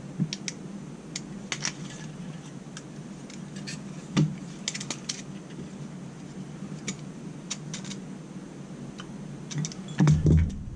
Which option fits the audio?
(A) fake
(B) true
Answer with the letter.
B